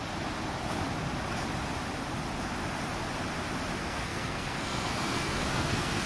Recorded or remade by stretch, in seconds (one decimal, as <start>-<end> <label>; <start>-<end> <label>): 0.0-3.8 recorded; 3.8-6.1 remade

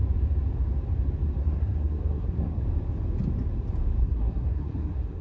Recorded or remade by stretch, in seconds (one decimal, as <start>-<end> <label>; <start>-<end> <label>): 0.0-1.4 recorded; 1.4-2.6 remade; 2.6-4.0 recorded; 4.0-5.2 remade

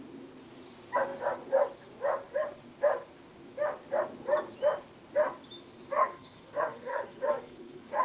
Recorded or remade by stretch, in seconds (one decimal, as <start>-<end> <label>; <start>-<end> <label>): 0.0-6.0 recorded; 6.0-8.0 remade